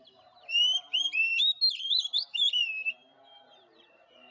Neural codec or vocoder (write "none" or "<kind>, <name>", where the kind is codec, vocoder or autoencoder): vocoder, BigVGAN v2